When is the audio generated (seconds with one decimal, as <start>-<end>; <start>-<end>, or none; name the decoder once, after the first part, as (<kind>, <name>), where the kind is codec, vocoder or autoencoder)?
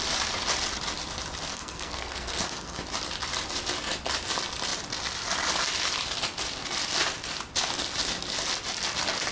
1.5-2.8 (codec, SNAC)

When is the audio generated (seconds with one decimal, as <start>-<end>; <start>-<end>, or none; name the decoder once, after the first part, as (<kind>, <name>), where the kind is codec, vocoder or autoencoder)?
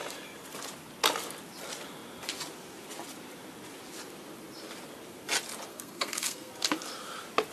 5.7-6.5 (codec, SNAC)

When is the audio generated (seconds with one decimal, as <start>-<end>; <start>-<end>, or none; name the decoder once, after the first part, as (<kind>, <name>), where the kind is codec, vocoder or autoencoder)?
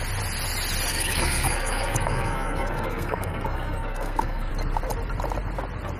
0.9-4.5 (codec, SNAC)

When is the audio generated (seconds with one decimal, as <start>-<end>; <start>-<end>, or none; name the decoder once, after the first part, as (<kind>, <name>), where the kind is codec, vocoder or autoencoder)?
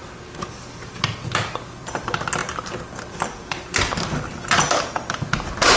none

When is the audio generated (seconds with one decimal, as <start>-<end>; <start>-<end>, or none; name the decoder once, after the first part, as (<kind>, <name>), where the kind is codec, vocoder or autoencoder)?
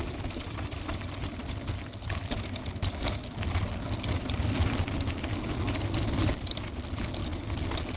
0.0-7.2 (vocoder, BigVGAN v2)